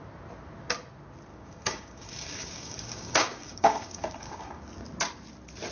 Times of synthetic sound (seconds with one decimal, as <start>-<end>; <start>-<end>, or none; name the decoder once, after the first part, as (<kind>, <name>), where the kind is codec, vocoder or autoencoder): 1.3-4.7 (codec, DAC)